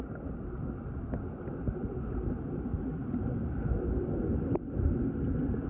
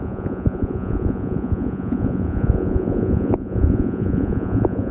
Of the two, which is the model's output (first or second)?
second